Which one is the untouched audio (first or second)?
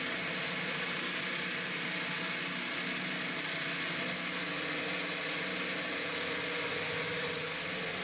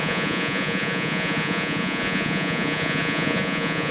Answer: first